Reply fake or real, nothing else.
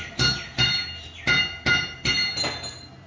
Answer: real